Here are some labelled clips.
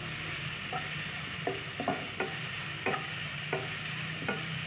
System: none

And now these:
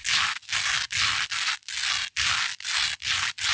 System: none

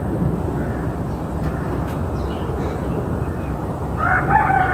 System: none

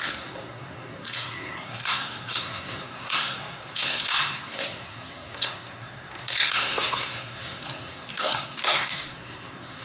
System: codec, SNAC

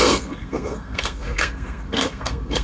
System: codec, SNAC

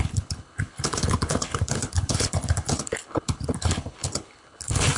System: codec, HILCodec